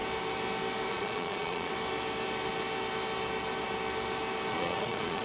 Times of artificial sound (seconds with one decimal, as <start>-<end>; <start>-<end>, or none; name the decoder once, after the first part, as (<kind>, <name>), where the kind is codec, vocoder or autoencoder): 0.9-1.7 (vocoder, Vocos); 4.5-5.2